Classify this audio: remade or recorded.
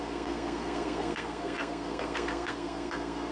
remade